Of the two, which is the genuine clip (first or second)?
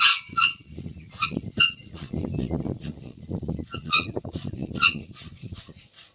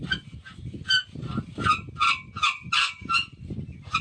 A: second